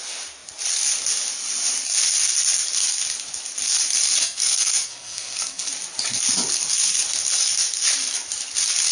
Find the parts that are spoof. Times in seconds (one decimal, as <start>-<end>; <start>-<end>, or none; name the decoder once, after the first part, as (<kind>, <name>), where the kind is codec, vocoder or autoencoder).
4.2-5.7 (codec, SNAC)

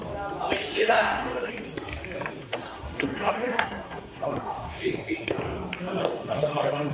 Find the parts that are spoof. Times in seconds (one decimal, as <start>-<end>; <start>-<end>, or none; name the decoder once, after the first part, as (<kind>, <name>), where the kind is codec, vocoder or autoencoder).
0.7-1.5 (codec, SNAC); 2.4-5.3; 6.0-6.9

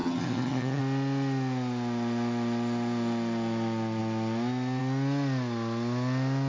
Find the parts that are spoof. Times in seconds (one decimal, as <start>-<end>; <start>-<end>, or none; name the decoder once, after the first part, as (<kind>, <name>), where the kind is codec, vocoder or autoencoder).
0.0-0.8 (vocoder, HiFi-GAN)

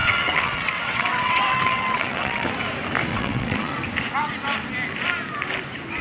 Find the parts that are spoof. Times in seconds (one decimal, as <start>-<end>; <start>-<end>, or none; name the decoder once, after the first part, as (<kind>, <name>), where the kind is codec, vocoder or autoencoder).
0.0-2.5 (vocoder, WaveNeXt); 3.1-3.8

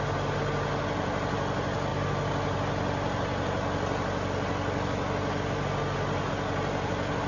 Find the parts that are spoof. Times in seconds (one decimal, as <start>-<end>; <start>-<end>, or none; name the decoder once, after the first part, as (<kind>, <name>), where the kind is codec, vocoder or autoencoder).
none

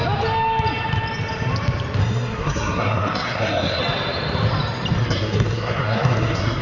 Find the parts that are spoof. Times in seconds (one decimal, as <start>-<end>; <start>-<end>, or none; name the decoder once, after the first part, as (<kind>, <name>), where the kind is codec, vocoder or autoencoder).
2.0-3.8 (codec, SNAC); 5.0-6.6